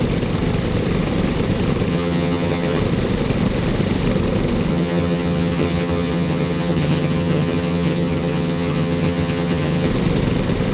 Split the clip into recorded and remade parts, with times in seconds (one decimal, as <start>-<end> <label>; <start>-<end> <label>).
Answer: 0.0-1.9 recorded; 1.9-2.8 remade; 2.8-4.7 recorded; 4.7-9.9 remade; 9.9-10.7 recorded